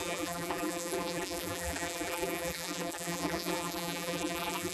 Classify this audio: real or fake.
fake